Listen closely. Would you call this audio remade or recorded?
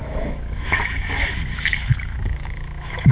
remade